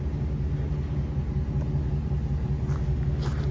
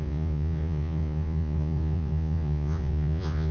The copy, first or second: second